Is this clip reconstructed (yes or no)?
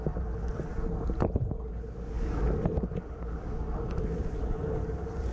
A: no